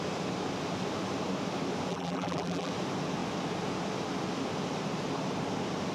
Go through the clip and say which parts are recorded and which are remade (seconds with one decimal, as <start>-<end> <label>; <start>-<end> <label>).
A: 0.0-1.9 recorded; 1.9-2.7 remade; 2.7-5.9 recorded